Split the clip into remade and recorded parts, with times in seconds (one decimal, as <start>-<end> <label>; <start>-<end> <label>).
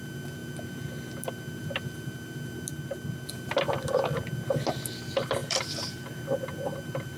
0.0-5.4 recorded; 5.4-6.1 remade; 6.1-7.2 recorded